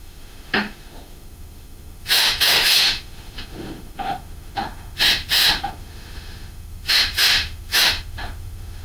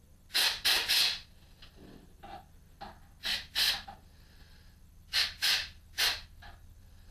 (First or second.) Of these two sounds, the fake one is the first